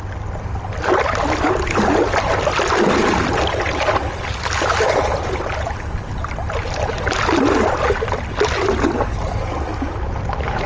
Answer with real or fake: real